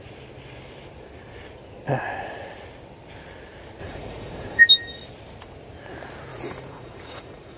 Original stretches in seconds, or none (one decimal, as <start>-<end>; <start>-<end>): 0.0-3.8; 4.6-6.3